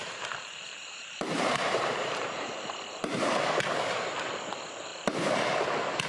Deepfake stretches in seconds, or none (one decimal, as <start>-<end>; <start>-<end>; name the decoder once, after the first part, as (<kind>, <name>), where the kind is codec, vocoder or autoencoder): 0.0-3.6 (vocoder, BigVGAN v2)